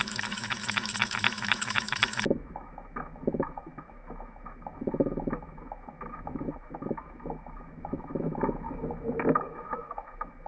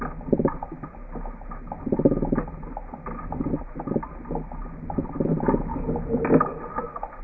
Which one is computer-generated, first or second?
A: first